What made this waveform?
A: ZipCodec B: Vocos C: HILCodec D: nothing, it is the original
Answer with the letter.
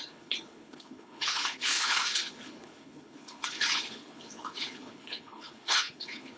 C